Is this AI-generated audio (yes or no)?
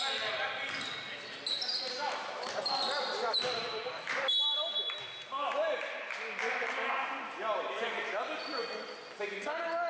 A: no